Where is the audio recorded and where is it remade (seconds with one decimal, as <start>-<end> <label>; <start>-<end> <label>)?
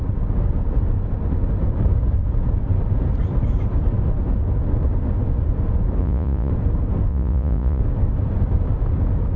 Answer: 0.0-6.0 recorded; 6.0-6.5 remade; 6.5-7.1 recorded; 7.1-7.8 remade; 7.8-9.4 recorded